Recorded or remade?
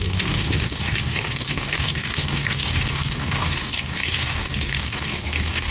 remade